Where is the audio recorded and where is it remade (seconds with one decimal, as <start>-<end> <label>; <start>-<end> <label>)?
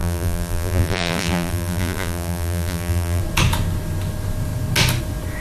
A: 0.0-3.2 remade; 3.2-5.4 recorded